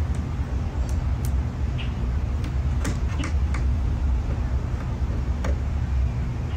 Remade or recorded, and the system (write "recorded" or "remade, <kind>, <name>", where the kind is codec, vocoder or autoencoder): recorded